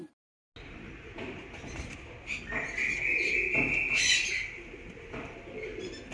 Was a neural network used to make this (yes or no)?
no